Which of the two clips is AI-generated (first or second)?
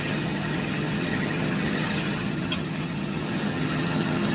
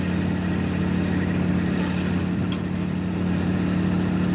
first